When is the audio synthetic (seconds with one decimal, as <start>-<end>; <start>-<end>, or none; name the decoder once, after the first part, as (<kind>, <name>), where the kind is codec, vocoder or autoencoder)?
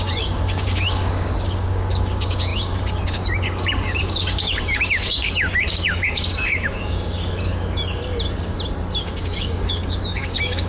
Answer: 0.0-8.0 (codec, DAC); 9.0-10.7